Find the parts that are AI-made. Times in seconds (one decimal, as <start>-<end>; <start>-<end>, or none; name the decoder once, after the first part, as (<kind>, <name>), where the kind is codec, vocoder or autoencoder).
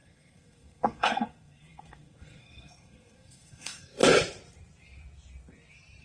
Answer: 0.0-4.0 (codec, SNAC)